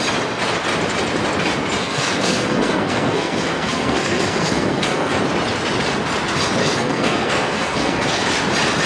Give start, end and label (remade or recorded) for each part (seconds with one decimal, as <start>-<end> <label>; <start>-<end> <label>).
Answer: 0.0-1.8 recorded; 1.8-5.2 remade; 5.2-6.6 recorded; 6.6-8.3 remade; 8.3-8.9 recorded